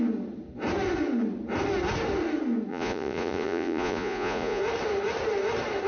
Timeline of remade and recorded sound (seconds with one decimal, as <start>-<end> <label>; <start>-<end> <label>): 0.0-2.7 recorded; 2.7-4.6 remade; 4.6-5.9 recorded